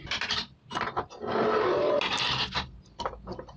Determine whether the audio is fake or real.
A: real